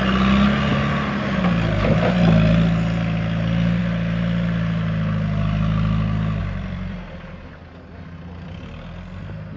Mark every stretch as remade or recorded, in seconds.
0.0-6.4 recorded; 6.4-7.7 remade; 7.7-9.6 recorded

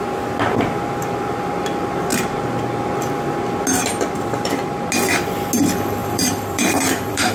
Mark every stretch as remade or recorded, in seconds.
0.0-2.1 recorded; 2.1-2.9 remade; 2.9-3.9 recorded; 3.9-4.6 remade; 4.6-6.0 recorded; 6.0-7.3 remade